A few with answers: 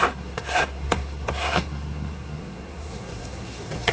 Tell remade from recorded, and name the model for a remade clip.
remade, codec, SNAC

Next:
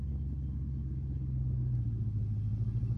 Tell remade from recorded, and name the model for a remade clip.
recorded